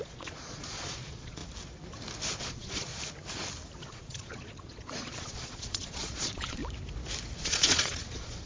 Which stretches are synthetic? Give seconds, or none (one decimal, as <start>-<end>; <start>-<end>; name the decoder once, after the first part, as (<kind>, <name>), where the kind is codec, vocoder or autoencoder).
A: 0.0-1.4 (vocoder, Vocos); 2.4-2.9; 3.8-6.6; 7.4-8.5